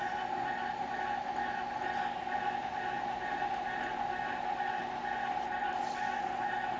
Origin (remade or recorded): recorded